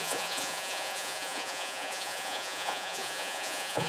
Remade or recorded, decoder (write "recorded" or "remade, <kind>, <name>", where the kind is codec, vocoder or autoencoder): remade, vocoder, Vocos